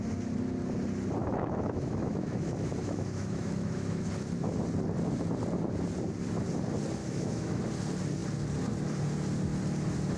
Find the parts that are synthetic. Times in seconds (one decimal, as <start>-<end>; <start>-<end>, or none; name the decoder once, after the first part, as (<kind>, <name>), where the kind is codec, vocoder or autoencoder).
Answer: 1.2-4.1 (autoencoder, DAC-VAE); 7.0-7.6